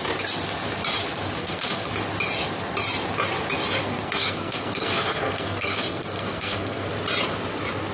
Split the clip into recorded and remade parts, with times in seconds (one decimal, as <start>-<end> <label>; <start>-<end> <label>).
0.0-1.4 recorded; 1.4-1.9 remade; 1.9-3.8 recorded; 3.8-6.9 remade; 6.9-7.9 recorded